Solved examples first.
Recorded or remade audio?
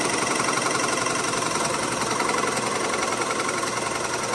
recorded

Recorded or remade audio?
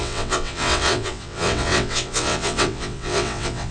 remade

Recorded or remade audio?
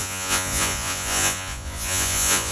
remade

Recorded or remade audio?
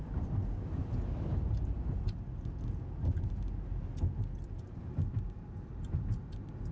recorded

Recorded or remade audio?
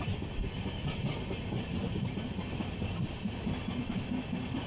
recorded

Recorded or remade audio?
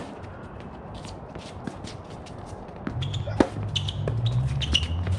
recorded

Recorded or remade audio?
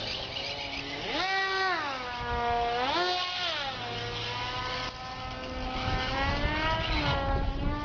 recorded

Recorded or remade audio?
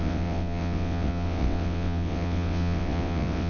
remade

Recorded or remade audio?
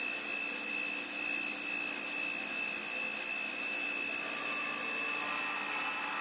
recorded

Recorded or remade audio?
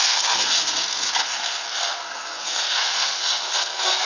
remade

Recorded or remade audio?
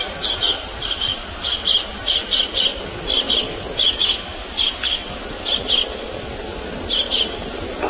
recorded